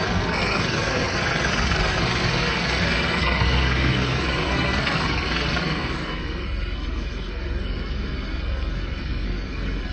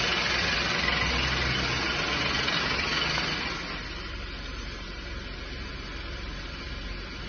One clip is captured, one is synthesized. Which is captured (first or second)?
second